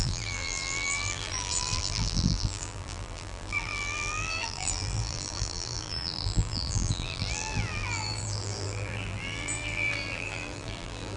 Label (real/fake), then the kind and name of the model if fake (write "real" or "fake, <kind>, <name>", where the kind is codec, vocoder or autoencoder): fake, vocoder, BigVGAN v2